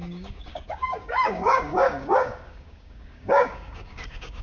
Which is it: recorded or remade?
remade